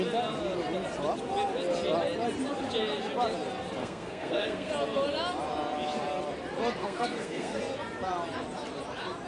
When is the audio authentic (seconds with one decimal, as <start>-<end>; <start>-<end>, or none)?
0.0-3.8; 4.7-6.8; 7.6-9.3